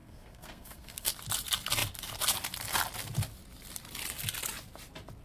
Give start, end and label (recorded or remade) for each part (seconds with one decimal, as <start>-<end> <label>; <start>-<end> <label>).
0.0-1.1 remade; 1.1-5.2 recorded